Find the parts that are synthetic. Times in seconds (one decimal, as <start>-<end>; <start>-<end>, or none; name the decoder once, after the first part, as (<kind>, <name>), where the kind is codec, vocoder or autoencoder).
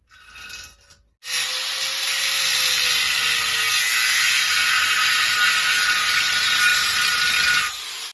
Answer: 6.7-7.3 (vocoder, BigVGAN v2)